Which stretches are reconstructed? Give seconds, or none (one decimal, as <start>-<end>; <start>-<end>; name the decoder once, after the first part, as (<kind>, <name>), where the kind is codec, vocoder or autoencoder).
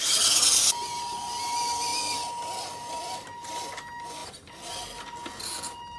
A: none